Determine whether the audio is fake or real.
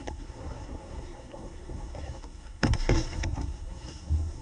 fake